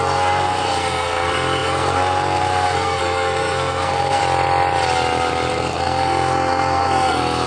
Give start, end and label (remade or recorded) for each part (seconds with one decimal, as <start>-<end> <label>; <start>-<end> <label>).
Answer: 0.0-4.2 remade; 4.2-5.5 recorded; 5.5-7.5 remade